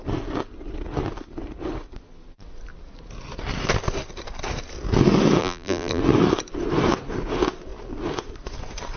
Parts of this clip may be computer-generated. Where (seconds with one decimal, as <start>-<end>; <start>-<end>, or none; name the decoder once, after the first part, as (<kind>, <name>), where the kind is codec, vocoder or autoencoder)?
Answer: 5.4-6.0 (vocoder, BigVGAN v2)